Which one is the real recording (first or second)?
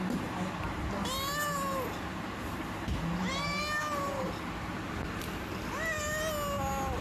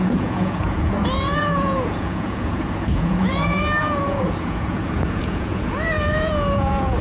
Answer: first